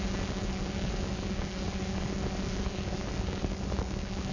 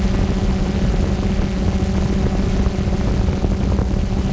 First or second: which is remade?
first